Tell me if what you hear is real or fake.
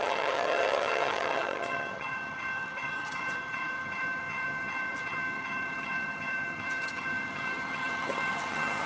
fake